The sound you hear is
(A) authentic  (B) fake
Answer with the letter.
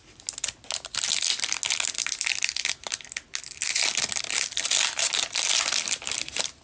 A